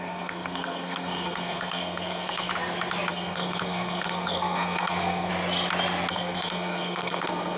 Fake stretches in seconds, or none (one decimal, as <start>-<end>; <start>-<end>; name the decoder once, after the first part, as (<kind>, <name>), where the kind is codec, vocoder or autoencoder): 0.0-2.5 (codec, SNAC); 3.1-5.3; 6.1-7.6